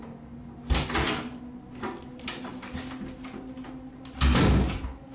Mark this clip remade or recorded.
recorded